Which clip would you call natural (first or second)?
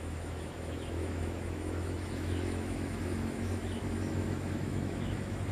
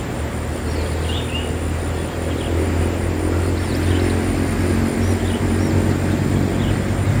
second